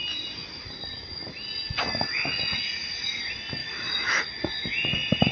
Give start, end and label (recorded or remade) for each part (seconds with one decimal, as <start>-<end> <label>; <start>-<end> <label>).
0.0-3.6 recorded; 3.6-4.2 remade; 4.2-5.3 recorded